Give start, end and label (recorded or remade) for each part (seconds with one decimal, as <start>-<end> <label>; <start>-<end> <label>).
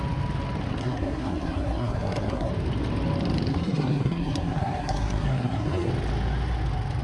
0.0-0.8 recorded; 0.8-2.5 remade; 2.5-3.5 recorded; 3.5-5.9 remade; 5.9-7.0 recorded